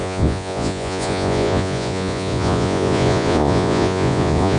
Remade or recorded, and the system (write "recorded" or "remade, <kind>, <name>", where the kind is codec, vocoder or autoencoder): remade, vocoder, Vocos